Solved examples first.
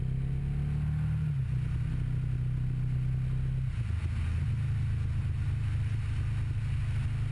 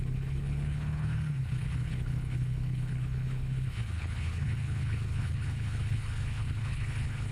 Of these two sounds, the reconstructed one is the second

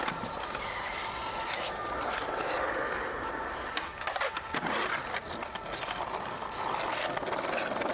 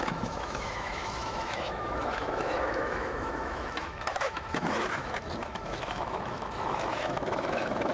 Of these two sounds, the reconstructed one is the second